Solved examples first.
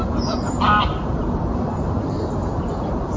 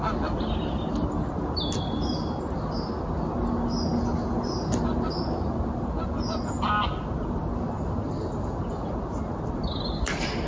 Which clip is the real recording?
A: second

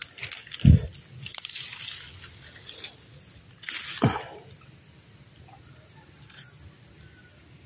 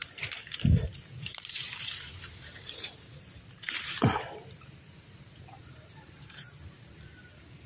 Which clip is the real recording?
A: first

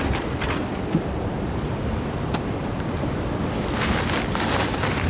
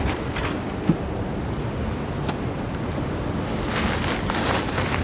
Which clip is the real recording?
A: second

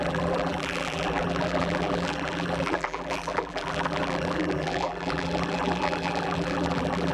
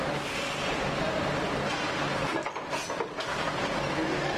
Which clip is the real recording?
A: second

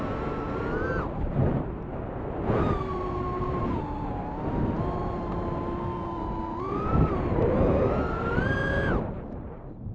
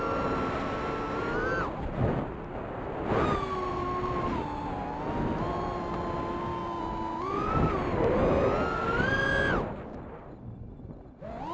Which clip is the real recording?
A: second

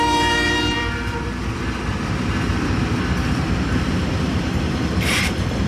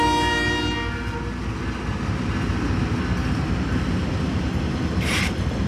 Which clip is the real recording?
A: second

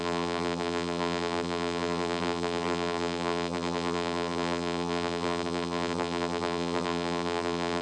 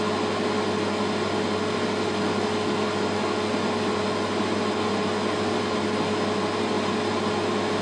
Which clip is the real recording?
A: second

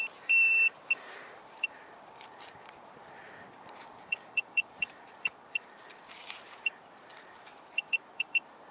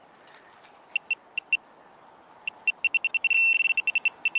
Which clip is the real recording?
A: second